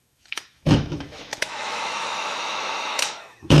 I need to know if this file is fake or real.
fake